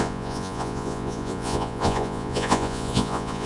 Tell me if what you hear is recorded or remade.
remade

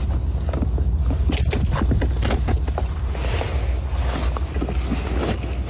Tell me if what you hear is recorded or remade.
recorded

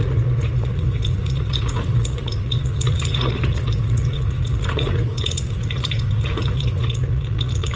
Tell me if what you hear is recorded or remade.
remade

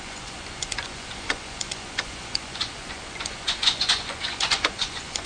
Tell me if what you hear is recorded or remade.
remade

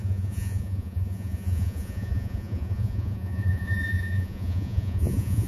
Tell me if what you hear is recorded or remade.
remade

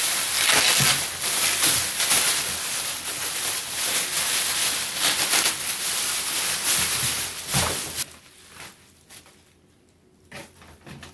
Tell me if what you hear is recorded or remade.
recorded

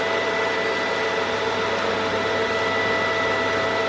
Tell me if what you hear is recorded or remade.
recorded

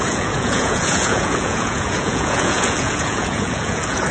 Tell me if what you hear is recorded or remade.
remade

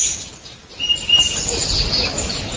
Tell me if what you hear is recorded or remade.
recorded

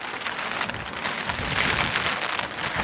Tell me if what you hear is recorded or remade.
recorded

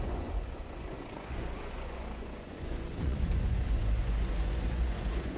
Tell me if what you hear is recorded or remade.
remade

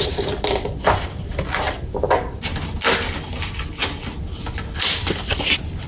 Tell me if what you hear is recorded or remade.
recorded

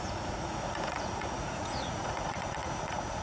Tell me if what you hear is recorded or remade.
remade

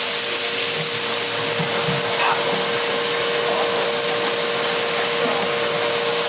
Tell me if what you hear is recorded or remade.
recorded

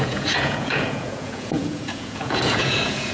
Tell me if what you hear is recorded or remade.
remade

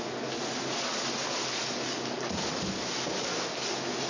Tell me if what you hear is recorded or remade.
recorded